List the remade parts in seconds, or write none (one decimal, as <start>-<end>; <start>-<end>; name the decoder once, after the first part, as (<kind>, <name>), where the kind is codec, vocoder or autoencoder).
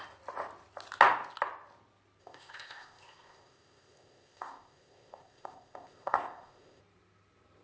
2.2-6.8 (codec, ZipCodec)